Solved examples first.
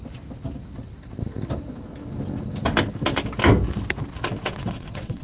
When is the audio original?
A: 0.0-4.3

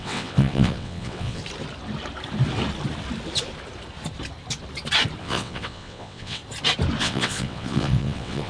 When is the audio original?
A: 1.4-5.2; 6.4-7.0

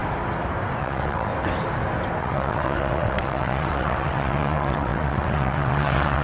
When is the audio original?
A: 0.0-0.8; 1.3-2.2

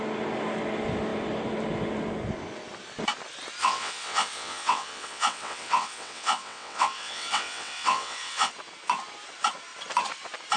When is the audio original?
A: 0.0-3.6; 8.5-10.6

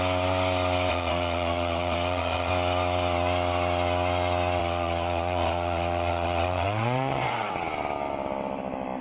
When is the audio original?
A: 0.0-0.9; 2.5-4.6; 7.5-9.0

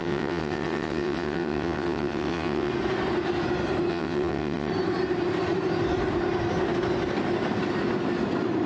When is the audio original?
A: 2.7-3.9; 4.7-8.7

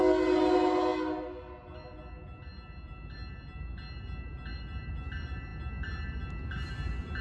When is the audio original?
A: 0.0-7.2

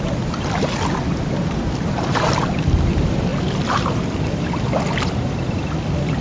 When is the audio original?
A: 0.0-6.2